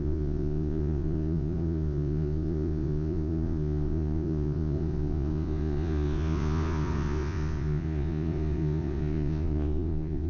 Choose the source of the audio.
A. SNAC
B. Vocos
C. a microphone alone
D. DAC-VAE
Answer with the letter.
B